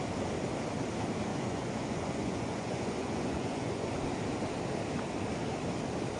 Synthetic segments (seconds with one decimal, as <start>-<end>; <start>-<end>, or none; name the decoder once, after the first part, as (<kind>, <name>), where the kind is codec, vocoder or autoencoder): 1.3-4.0 (vocoder, Vocos)